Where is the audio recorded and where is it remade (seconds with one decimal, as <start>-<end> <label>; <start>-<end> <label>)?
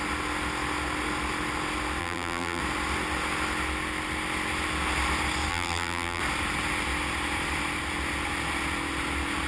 0.0-2.0 recorded; 2.0-2.6 remade; 2.6-5.5 recorded; 5.5-6.2 remade; 6.2-9.5 recorded